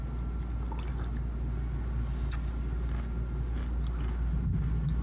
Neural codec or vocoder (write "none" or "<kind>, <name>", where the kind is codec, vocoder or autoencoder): none